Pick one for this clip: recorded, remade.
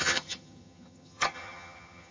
remade